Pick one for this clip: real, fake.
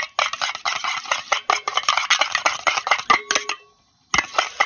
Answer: real